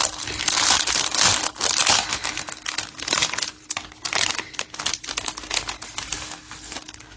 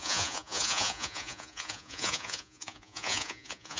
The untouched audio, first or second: first